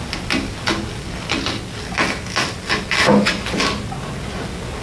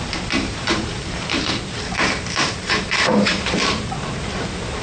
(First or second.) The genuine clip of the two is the first